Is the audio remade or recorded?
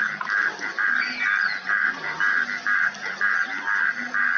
recorded